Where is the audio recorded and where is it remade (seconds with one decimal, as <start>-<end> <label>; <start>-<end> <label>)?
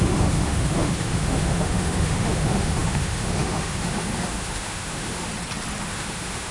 0.0-5.3 remade; 5.3-5.8 recorded; 5.8-6.5 remade